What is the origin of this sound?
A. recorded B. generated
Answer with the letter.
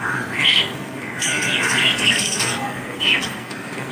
B